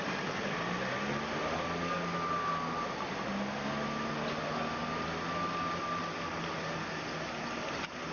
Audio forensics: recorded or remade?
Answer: recorded